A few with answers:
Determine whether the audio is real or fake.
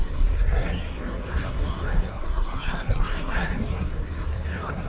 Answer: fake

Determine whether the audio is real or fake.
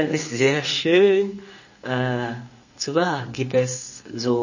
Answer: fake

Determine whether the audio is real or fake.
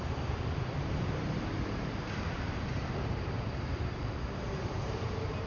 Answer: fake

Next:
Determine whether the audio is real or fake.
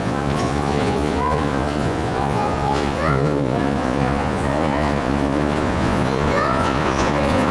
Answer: fake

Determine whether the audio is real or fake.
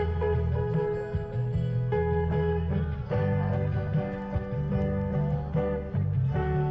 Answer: real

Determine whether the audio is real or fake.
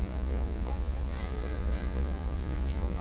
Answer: fake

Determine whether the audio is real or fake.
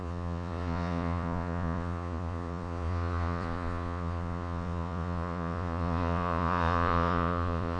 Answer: fake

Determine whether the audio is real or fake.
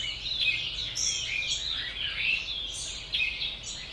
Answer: real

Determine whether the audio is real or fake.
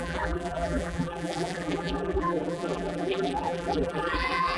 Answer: fake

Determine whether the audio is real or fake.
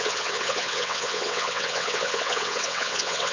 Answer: fake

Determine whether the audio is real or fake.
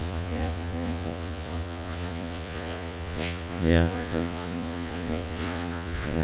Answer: fake